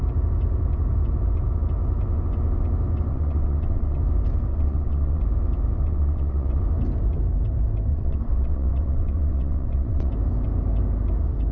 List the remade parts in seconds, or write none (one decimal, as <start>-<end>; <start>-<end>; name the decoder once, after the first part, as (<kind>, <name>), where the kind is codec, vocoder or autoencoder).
3.1-4.0 (vocoder, WaveNeXt); 4.5-5.2; 5.8-6.6; 7.9-10.1